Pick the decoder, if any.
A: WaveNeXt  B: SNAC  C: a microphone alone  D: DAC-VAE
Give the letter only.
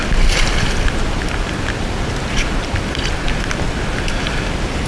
C